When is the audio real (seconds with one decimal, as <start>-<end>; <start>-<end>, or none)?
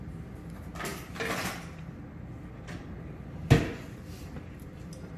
0.0-5.2